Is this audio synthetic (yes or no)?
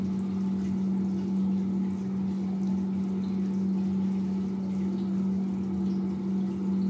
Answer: no